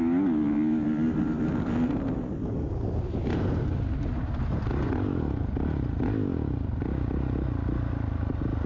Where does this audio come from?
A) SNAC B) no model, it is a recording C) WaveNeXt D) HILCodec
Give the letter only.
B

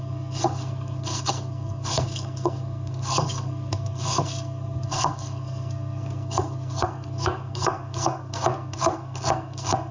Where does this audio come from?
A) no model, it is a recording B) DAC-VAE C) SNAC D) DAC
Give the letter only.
C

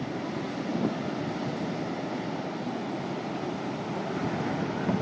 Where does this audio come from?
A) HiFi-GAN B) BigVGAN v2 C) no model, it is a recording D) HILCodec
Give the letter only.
C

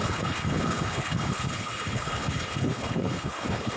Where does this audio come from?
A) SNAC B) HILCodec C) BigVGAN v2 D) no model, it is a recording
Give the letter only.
B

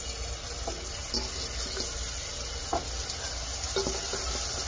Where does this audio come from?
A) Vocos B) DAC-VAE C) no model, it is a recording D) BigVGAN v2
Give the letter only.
C